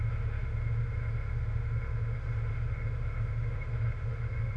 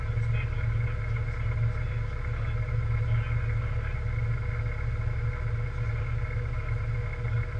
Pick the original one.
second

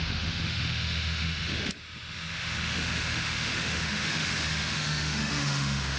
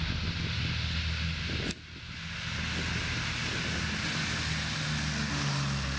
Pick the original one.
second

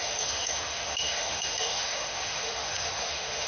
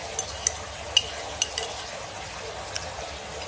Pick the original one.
second